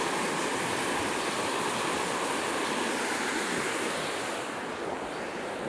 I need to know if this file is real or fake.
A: real